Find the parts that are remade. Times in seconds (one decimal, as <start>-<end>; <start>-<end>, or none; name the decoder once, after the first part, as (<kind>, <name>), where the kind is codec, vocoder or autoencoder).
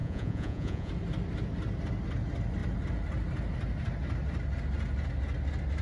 0.0-0.9 (vocoder, Vocos)